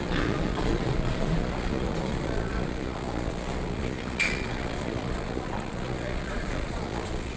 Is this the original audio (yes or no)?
no